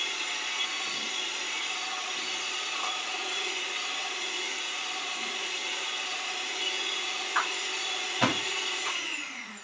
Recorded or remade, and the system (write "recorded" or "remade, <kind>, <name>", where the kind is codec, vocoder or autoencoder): remade, vocoder, Vocos